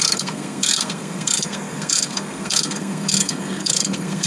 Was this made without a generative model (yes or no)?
no